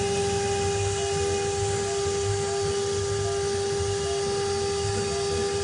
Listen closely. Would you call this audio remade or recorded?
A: recorded